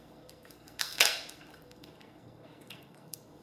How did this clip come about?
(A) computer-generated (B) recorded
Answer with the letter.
A